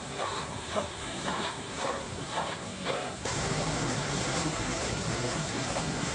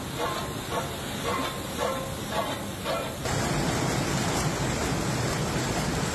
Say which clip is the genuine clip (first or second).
second